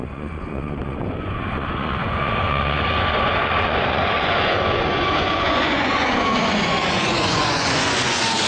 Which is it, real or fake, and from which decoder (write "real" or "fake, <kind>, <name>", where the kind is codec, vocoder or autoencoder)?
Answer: fake, vocoder, Vocos